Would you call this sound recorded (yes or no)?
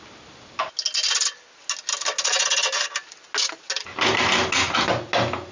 yes